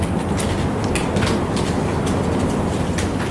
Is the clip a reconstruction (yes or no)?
no